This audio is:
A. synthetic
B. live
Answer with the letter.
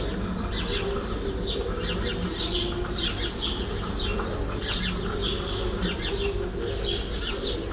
B